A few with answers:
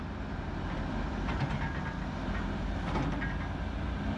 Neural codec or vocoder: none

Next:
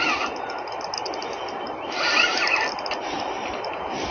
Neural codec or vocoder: none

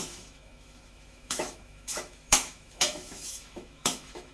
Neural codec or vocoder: autoencoder, DAC-VAE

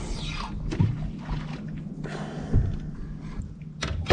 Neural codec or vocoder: none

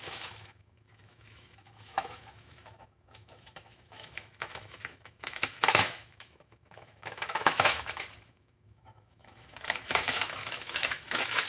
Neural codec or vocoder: autoencoder, DAC-VAE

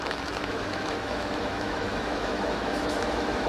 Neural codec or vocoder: autoencoder, DAC-VAE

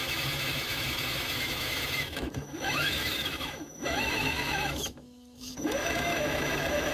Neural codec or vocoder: autoencoder, DAC-VAE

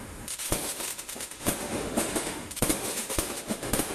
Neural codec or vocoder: autoencoder, DAC-VAE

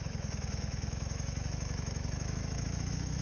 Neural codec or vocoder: autoencoder, DAC-VAE